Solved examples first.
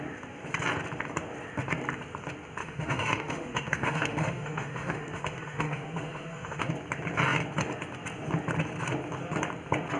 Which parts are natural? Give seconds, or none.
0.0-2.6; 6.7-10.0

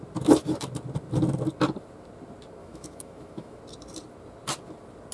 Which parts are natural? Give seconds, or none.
0.0-2.6; 3.6-5.1